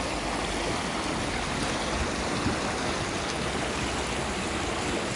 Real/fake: real